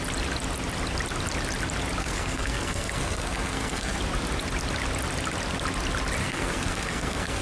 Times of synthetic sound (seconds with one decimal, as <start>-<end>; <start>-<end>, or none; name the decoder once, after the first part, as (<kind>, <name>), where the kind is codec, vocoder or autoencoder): 2.0-4.0 (codec, SNAC); 6.2-7.4